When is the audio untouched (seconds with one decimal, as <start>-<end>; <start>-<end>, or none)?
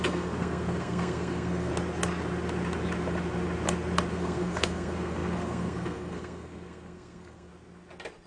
1.7-4.1; 7.5-8.3